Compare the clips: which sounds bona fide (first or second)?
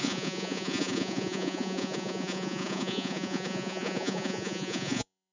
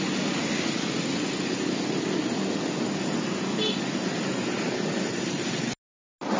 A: second